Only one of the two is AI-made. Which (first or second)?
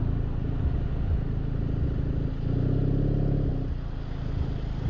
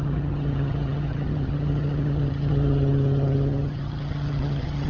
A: second